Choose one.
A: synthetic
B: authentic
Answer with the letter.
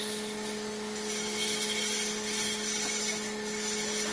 B